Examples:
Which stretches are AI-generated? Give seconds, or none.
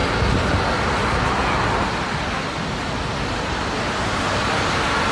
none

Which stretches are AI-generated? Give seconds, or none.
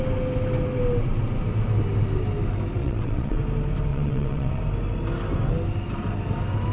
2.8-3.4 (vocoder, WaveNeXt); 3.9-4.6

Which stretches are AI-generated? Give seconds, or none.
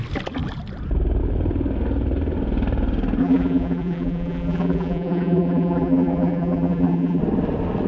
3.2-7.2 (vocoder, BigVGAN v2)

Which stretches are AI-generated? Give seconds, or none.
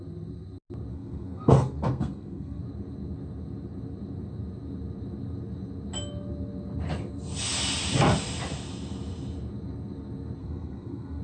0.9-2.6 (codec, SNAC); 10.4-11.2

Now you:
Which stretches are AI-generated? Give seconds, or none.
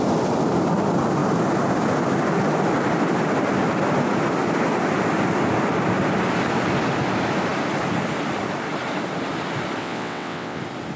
9.8-10.6 (vocoder, WaveNeXt)